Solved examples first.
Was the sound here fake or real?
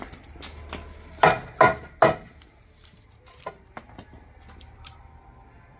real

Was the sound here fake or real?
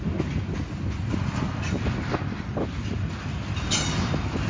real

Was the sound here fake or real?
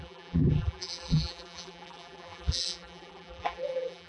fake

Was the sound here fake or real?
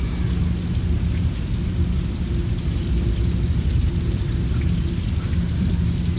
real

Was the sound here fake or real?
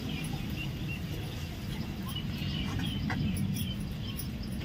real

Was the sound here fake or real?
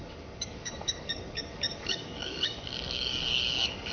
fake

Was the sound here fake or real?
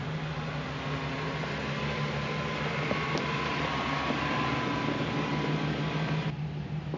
real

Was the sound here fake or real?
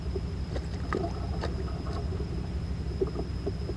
real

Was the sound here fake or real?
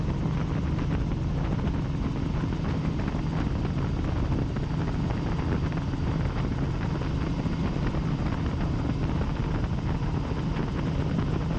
real